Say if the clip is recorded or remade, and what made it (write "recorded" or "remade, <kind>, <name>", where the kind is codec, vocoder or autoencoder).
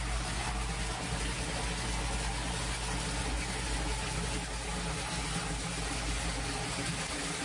recorded